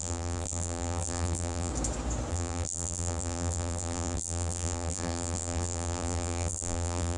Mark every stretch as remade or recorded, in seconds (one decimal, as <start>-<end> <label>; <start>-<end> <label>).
0.0-1.7 remade; 1.7-2.3 recorded; 2.3-7.2 remade